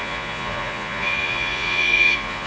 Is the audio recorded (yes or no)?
no